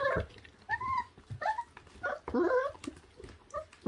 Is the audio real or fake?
real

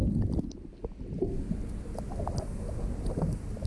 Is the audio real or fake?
real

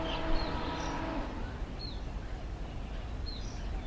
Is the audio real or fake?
real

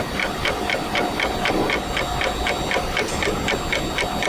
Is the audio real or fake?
real